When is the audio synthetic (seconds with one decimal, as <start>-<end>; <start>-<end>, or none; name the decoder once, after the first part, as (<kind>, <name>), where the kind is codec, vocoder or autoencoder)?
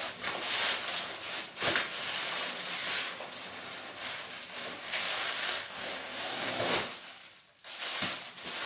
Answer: 4.6-6.5 (codec, DAC)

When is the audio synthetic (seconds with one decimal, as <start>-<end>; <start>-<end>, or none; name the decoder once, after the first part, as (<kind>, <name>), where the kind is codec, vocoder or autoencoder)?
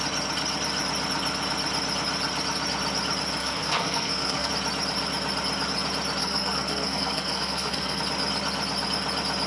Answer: 3.4-4.5 (codec, SNAC); 6.2-8.0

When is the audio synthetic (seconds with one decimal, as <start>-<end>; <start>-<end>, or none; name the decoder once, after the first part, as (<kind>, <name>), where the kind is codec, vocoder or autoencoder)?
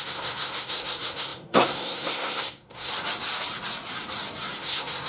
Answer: 0.0-2.9 (codec, SNAC); 4.6-5.1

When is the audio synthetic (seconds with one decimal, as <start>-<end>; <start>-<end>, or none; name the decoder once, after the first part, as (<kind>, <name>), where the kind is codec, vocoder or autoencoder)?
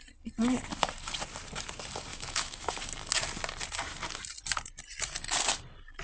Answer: 2.1-2.7 (autoencoder, DAC-VAE)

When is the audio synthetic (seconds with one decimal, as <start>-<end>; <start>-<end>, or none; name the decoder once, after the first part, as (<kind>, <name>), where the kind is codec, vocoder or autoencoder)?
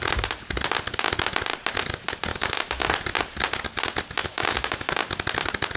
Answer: 2.3-2.9 (autoencoder, DAC-VAE); 4.2-5.0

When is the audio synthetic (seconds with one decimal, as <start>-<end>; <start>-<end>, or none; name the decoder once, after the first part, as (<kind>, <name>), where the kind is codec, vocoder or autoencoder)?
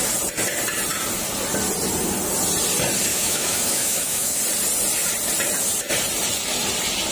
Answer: 3.1-4.4 (autoencoder, DAC-VAE)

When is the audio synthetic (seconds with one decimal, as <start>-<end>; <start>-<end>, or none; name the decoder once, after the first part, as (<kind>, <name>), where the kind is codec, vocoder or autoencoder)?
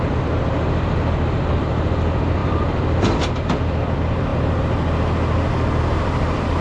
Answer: 0.0-4.3 (vocoder, BigVGAN v2); 5.8-6.6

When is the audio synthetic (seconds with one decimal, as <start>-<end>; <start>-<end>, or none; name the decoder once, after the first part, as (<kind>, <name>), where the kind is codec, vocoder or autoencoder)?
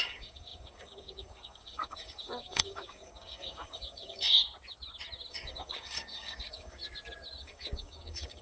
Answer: 0.0-4.4 (codec, DAC); 5.3-6.8; 7.4-8.4